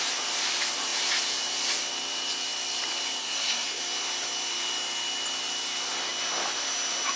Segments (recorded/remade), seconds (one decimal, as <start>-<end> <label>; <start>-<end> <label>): 0.0-3.2 recorded; 3.2-3.8 remade; 3.8-7.2 recorded